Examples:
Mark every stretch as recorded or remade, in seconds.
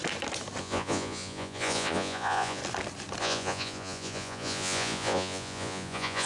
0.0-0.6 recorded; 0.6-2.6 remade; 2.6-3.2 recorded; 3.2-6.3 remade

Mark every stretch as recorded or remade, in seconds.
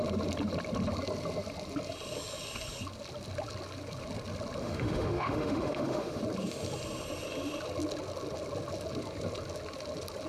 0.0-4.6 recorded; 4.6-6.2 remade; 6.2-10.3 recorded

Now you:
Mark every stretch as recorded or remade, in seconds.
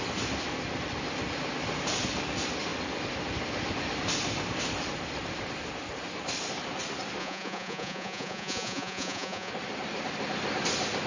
0.0-7.2 recorded; 7.2-9.5 remade; 9.5-11.1 recorded